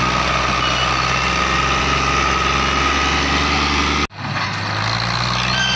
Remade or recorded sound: recorded